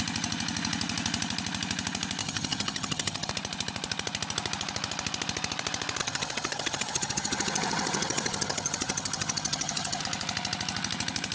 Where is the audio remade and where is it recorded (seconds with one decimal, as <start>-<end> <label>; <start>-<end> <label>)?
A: 0.0-2.2 recorded; 2.2-3.3 remade; 3.3-6.0 recorded; 6.0-10.0 remade; 10.0-11.3 recorded